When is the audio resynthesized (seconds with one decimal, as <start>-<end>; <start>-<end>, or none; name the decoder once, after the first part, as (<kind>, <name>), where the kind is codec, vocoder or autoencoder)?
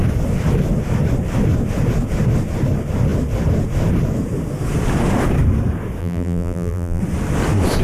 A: 6.0-7.0 (vocoder, BigVGAN v2)